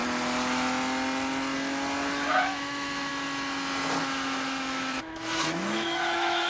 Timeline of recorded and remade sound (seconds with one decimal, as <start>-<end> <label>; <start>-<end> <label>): 0.0-2.3 recorded; 2.3-3.1 remade; 3.1-4.0 recorded; 4.0-6.5 remade